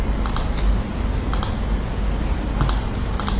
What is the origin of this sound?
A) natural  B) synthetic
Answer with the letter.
B